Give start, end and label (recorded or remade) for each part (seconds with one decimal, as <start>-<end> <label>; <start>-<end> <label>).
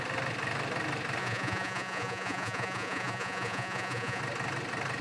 0.0-1.2 recorded; 1.2-4.2 remade; 4.2-5.0 recorded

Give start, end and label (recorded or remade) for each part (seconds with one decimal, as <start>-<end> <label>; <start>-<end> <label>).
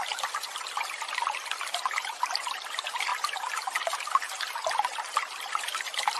0.0-3.1 remade; 3.1-5.0 recorded; 5.0-6.2 remade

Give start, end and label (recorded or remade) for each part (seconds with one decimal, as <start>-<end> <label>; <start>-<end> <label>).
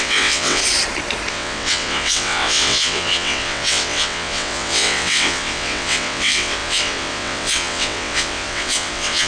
0.0-0.6 remade; 0.6-1.3 recorded; 1.3-9.3 remade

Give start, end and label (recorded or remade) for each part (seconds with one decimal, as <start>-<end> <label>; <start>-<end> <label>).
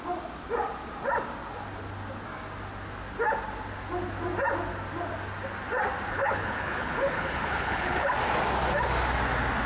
0.0-6.1 recorded; 6.1-8.1 remade; 8.1-9.7 recorded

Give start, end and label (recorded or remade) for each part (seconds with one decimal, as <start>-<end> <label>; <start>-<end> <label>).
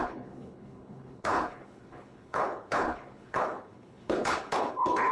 0.0-5.1 remade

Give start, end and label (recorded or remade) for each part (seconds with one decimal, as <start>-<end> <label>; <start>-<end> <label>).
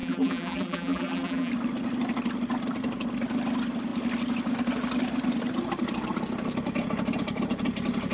0.0-1.5 remade; 1.5-8.1 recorded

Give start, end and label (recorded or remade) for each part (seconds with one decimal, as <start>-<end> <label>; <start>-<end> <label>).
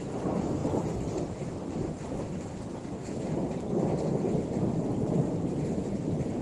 0.0-6.4 recorded